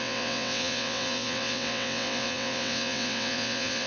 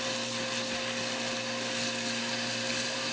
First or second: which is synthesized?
first